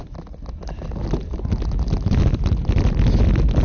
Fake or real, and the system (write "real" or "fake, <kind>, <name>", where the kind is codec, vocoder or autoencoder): real